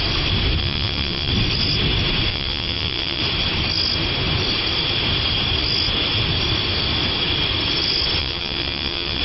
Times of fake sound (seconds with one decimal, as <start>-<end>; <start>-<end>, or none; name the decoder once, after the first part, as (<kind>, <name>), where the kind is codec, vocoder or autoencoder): 0.6-1.3 (vocoder, WaveNeXt); 2.3-3.2; 8.2-9.2